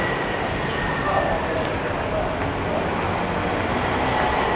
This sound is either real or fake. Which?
real